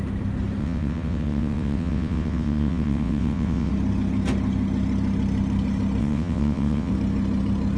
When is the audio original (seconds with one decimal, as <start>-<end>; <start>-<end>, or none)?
0.0-0.6; 3.7-6.0; 6.9-7.8